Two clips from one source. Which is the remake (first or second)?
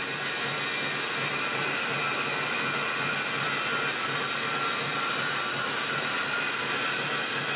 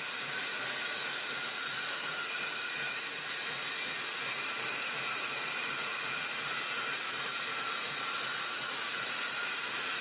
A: second